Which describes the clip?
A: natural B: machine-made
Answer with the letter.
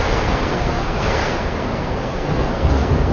B